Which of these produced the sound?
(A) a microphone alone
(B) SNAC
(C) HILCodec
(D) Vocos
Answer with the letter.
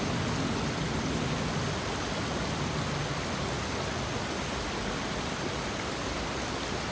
A